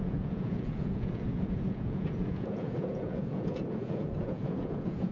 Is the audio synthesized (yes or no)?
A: yes